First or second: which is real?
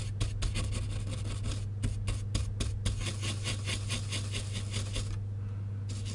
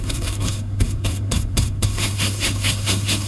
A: first